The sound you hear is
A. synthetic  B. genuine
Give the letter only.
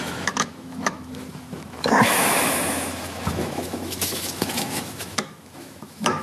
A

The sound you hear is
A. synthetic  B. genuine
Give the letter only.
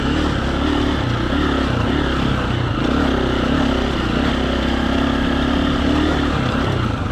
B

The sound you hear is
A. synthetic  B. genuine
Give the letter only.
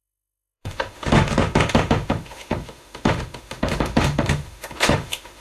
A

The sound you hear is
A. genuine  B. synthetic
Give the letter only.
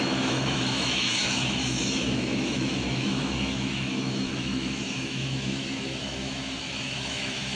B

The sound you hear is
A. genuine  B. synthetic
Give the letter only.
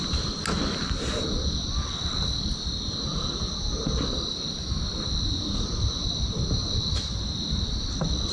A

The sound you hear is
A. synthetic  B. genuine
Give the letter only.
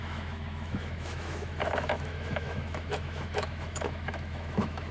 A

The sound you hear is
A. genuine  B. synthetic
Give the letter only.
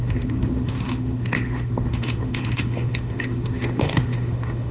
B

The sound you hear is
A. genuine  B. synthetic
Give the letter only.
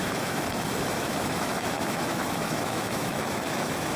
B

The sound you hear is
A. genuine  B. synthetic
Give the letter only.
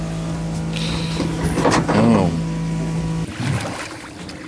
A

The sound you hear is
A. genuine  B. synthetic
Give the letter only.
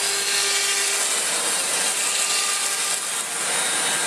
A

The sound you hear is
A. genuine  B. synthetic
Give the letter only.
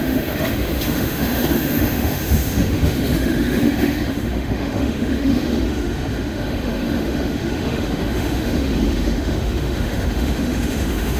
B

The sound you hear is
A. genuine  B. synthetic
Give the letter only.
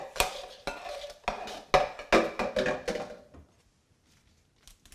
A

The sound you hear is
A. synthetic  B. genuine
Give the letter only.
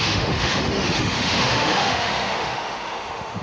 A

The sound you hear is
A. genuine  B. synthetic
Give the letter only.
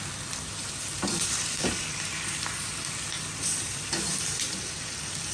A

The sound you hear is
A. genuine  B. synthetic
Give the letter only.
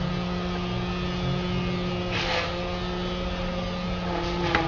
A